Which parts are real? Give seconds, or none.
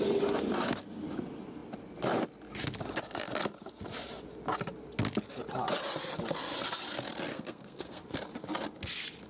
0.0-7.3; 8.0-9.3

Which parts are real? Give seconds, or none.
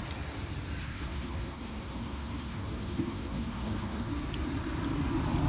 0.0-0.8; 4.1-5.5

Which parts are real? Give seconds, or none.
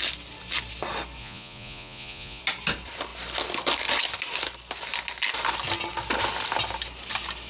0.0-1.2; 2.4-7.5